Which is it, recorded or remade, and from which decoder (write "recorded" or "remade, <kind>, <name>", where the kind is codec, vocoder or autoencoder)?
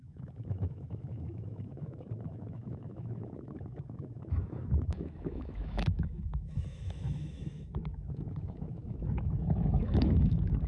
remade, autoencoder, DAC-VAE